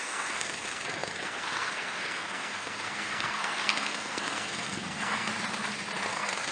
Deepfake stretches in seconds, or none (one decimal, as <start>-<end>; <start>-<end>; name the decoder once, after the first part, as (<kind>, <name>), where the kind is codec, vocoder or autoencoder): 0.0-5.3 (codec, SNAC); 6.1-6.5